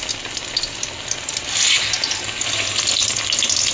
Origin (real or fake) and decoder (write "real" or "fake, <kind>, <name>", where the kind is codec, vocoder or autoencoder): real